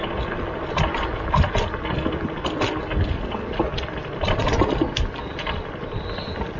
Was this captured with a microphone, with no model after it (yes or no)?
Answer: yes